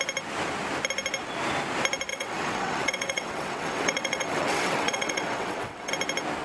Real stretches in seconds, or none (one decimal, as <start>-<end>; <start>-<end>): 0.0-2.1; 5.9-6.4